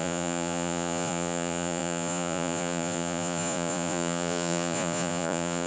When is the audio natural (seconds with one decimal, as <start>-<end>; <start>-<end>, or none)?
none